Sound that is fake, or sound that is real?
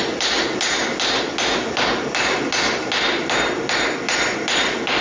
real